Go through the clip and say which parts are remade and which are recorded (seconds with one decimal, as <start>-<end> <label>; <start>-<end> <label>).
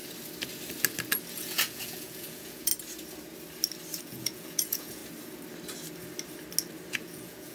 0.0-1.3 recorded; 1.3-2.7 remade; 2.7-4.0 recorded; 4.0-5.0 remade; 5.0-6.9 recorded; 6.9-7.5 remade